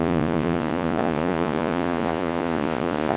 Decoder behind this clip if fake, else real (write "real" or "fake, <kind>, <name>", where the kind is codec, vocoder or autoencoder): fake, vocoder, Vocos